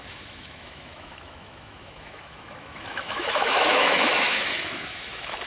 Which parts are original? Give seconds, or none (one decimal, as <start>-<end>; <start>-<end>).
none